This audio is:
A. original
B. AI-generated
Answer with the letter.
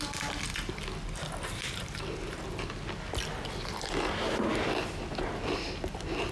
A